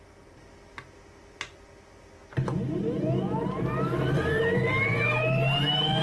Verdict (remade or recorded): recorded